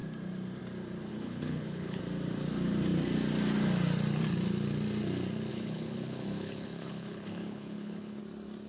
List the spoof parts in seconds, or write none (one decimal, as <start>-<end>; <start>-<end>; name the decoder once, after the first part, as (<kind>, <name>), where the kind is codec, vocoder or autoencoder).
1.1-2.0 (codec, HILCodec); 5.5-8.2

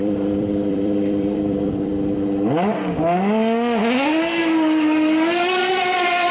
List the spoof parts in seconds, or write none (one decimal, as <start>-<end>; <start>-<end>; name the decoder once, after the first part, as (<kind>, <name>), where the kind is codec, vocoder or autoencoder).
0.0-1.9 (vocoder, BigVGAN v2); 5.7-6.3

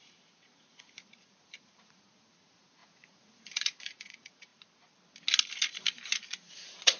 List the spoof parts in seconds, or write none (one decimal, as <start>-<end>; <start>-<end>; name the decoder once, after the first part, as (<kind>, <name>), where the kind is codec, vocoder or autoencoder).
0.0-4.5 (vocoder, Vocos); 6.3-7.0

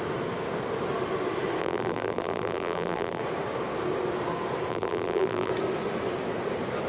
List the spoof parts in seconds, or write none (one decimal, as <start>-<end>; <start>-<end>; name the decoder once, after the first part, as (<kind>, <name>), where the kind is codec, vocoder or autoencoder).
1.6-3.2 (vocoder, BigVGAN v2); 4.7-5.5

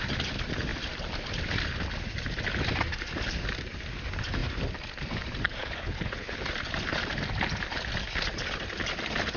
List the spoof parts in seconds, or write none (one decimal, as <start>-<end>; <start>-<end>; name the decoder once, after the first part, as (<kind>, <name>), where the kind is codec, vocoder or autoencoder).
5.6-6.4 (codec, HILCodec)

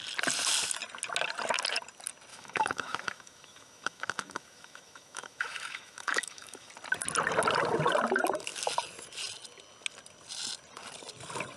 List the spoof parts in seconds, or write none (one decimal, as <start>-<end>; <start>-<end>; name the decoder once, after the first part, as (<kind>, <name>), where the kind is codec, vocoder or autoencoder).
2.3-6.7 (autoencoder, DAC-VAE)